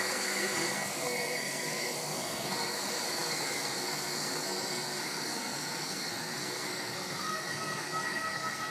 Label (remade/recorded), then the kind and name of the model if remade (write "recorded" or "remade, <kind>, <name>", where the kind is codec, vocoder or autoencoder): remade, codec, SNAC